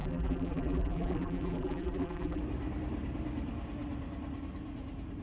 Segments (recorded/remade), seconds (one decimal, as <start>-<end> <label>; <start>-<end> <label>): 0.0-2.4 remade; 2.4-5.2 recorded

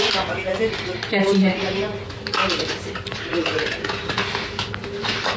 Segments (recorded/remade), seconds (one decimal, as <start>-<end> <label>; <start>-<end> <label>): 0.0-5.4 recorded